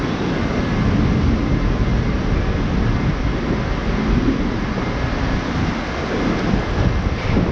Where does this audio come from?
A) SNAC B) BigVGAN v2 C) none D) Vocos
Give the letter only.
C